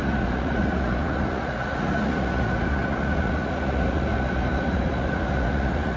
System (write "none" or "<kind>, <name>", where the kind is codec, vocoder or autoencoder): vocoder, Vocos